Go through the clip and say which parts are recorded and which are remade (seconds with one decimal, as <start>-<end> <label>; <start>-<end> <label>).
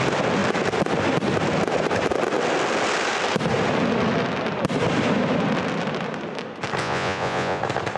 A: 0.0-6.8 recorded; 6.8-7.6 remade; 7.6-8.0 recorded